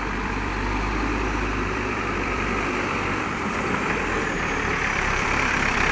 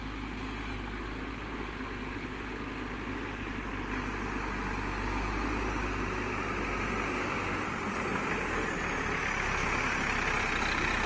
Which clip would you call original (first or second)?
second